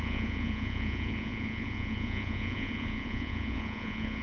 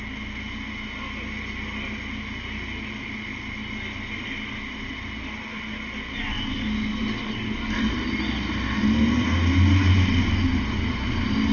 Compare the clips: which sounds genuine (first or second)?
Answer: second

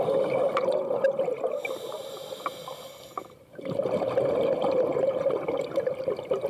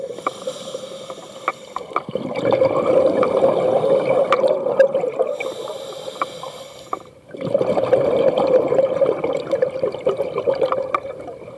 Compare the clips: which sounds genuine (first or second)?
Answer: first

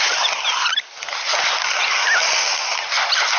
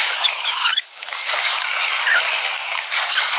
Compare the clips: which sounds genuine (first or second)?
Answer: first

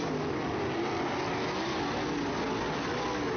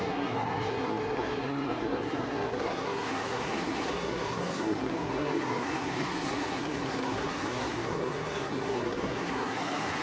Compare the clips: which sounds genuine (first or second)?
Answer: first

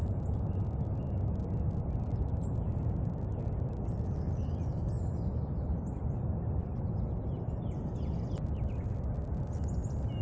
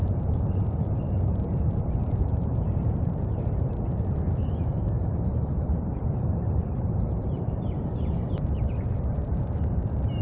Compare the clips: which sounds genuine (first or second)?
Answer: first